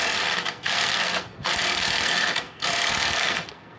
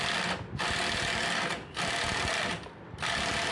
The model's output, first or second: first